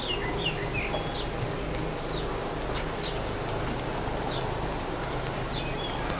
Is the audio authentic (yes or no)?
yes